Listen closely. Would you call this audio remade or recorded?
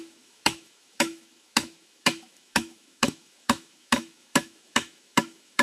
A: remade